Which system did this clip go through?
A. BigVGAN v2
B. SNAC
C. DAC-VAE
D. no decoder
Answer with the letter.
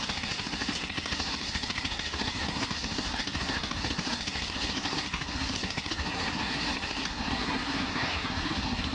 B